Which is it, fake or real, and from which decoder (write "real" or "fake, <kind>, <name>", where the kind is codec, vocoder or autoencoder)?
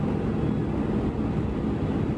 real